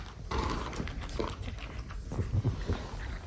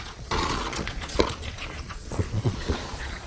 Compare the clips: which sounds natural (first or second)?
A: first